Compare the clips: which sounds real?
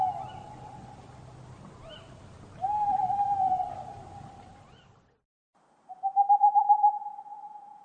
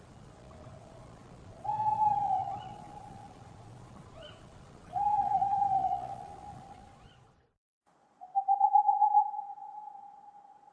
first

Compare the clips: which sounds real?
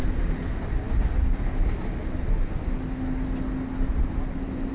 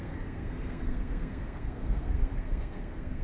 first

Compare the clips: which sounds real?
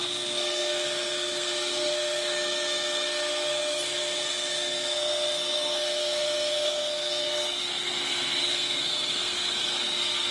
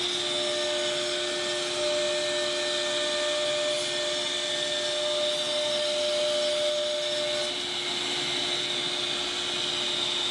second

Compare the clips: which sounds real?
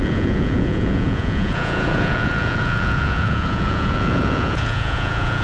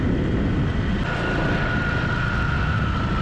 second